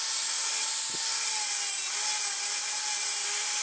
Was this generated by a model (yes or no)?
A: no